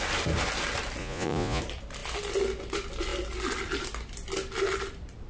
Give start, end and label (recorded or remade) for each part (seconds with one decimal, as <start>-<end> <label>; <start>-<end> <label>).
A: 0.0-1.0 recorded; 1.0-1.6 remade; 1.6-5.3 recorded